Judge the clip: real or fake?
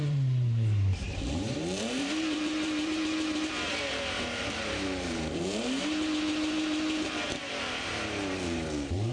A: fake